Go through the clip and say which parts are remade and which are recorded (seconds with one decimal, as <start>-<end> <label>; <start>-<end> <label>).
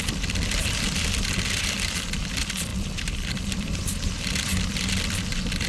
0.0-5.7 remade